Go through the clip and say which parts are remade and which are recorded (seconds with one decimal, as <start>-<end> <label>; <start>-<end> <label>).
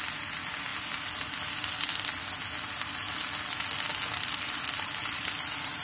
0.0-5.8 recorded